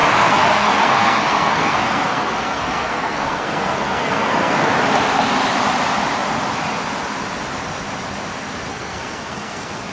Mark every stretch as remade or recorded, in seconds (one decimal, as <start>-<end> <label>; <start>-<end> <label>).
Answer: 0.0-4.7 remade; 4.7-8.7 recorded; 8.7-9.9 remade